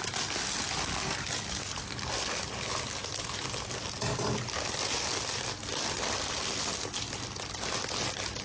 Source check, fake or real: real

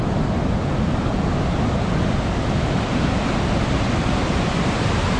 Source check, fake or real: real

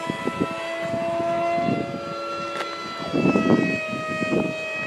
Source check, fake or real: real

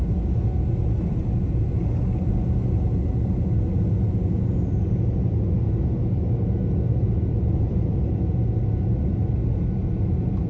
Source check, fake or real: real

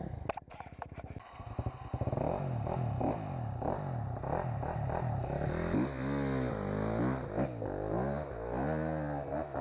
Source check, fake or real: real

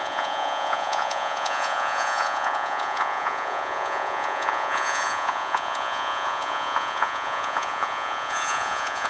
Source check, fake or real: fake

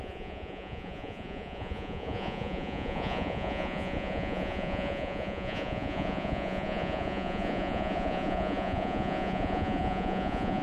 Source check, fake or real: fake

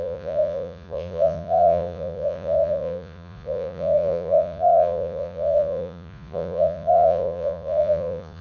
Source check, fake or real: fake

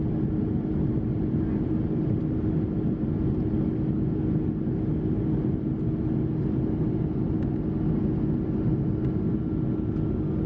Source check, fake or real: real